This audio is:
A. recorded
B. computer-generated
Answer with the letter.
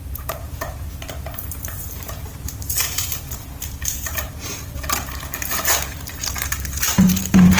B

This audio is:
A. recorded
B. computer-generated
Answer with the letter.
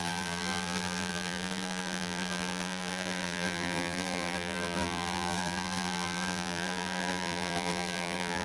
B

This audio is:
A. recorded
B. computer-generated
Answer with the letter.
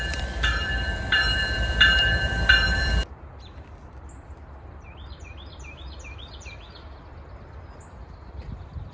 B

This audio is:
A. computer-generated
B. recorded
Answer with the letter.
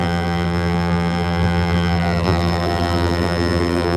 A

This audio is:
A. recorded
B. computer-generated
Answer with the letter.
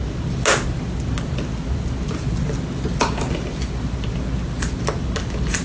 A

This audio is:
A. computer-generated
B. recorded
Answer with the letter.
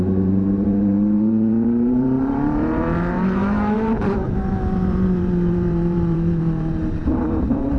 A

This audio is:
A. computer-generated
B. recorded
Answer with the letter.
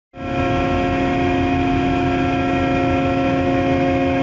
B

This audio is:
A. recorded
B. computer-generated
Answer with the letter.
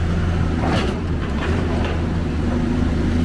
B